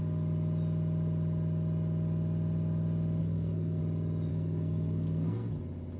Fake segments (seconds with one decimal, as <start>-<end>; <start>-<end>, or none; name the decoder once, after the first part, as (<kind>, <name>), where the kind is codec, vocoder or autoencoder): 3.2-3.8 (codec, SNAC); 4.3-5.5